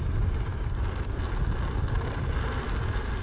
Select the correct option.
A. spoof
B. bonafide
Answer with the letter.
B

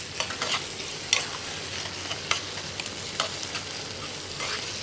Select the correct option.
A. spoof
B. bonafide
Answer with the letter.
B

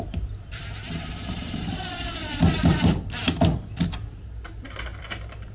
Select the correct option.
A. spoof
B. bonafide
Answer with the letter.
A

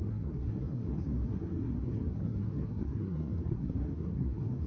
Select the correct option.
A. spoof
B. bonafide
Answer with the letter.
A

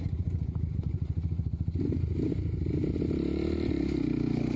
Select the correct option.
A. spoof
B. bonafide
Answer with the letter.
A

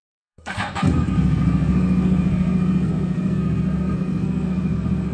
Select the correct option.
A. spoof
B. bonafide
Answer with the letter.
A